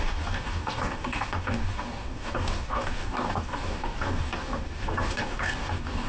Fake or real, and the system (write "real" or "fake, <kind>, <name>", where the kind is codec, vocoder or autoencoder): fake, codec, DAC